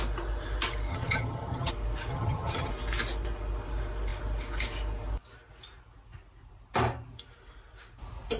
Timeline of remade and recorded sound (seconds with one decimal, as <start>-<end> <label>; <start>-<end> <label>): 0.0-0.9 recorded; 0.9-1.7 remade; 1.7-2.1 recorded; 2.1-2.7 remade; 2.7-8.4 recorded